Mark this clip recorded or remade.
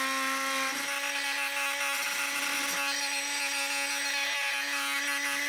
recorded